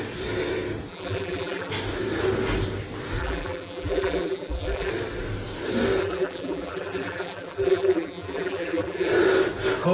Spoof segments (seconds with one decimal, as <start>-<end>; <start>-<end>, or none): 0.9-1.7; 3.2-4.9; 6.0-9.1